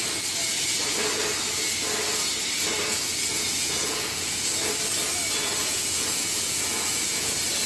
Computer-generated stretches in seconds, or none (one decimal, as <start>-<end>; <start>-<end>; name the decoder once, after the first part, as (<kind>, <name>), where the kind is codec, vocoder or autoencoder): 2.9-4.5 (vocoder, Vocos); 5.6-7.3